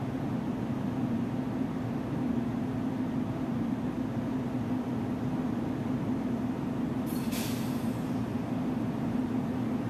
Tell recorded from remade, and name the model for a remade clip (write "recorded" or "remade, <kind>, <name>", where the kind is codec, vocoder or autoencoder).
recorded